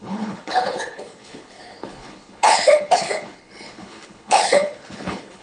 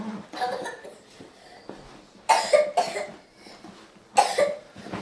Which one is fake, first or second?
first